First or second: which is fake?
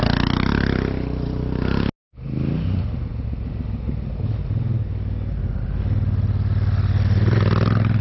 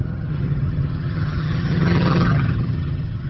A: second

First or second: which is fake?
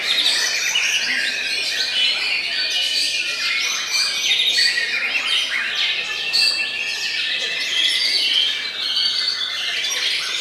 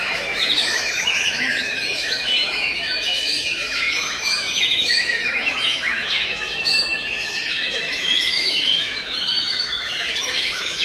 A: second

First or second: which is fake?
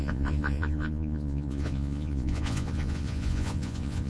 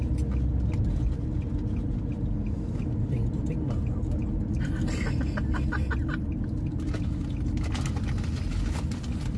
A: first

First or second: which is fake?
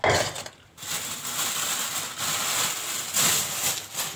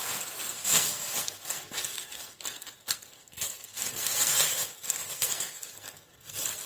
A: second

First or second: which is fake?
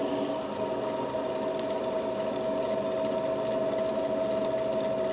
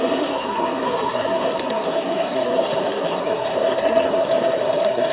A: second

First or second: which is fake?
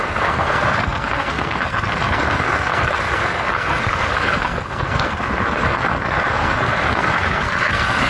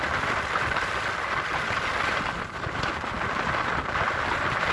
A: first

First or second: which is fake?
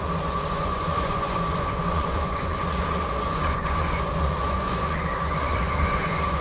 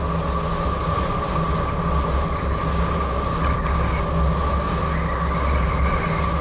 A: first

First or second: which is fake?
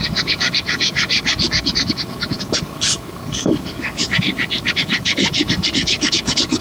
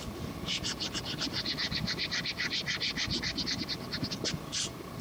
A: first